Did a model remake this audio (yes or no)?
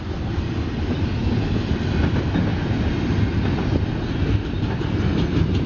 no